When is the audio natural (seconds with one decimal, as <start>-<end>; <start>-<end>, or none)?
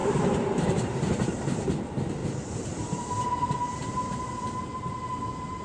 1.1-2.2; 4.1-5.6